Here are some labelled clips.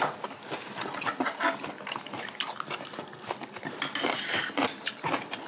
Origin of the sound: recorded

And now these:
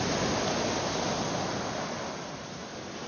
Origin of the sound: recorded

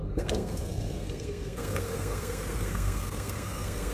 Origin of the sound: remade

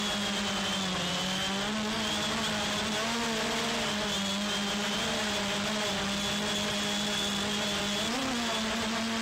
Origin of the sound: recorded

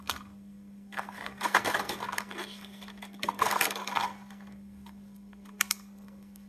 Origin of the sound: remade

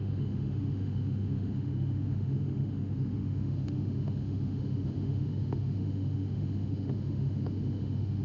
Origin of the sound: remade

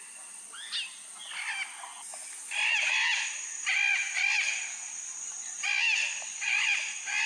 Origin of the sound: recorded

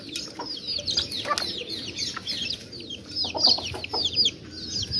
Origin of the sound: recorded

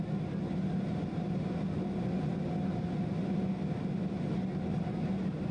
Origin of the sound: recorded